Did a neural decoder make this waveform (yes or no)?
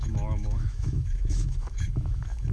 yes